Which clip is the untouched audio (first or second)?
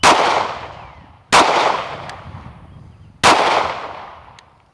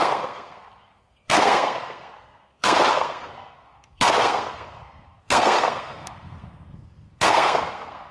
first